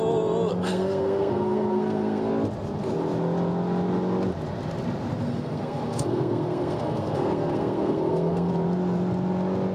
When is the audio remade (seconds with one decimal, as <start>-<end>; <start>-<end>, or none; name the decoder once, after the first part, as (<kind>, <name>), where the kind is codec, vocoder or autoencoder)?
0.5-2.3 (codec, SNAC); 5.2-8.5